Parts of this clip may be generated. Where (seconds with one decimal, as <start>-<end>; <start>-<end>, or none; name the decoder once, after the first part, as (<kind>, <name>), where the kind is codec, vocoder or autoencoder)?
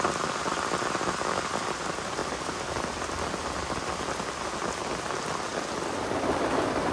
2.2-4.0 (vocoder, BigVGAN v2); 5.5-6.9